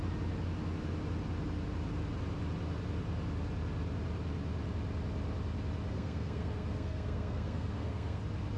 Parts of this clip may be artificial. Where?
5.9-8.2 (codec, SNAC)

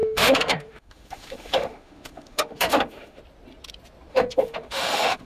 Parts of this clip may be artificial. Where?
0.0-3.2 (autoencoder, DAC-VAE); 4.1-5.3

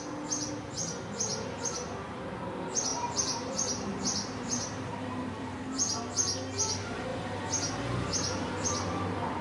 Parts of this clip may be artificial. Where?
2.9-6.0 (vocoder, BigVGAN v2); 7.1-8.5

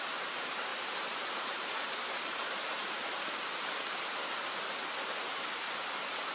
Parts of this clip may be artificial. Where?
0.7-3.3 (vocoder, BigVGAN v2)

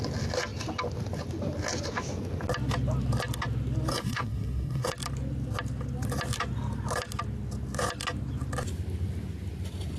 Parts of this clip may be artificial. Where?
3.9-4.9 (codec, SNAC)

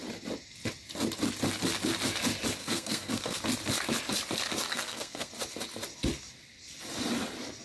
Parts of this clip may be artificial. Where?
2.6-3.4 (codec, SNAC); 4.7-5.3

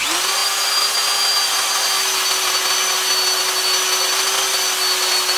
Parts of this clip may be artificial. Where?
none